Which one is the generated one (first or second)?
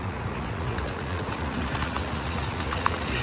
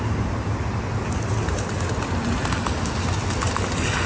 first